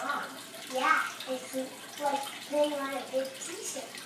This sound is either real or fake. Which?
real